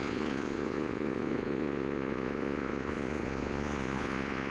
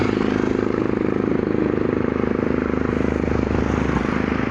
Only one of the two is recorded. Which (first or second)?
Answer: second